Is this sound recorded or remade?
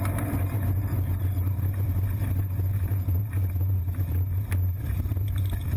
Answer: remade